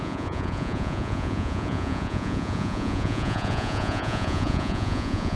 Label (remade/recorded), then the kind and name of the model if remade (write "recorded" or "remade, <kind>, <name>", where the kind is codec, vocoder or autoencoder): remade, vocoder, Vocos